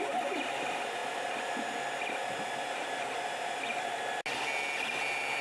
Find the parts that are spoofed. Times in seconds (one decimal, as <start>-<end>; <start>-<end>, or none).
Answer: none